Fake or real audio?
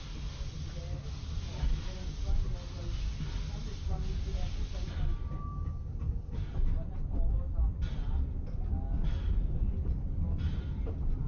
real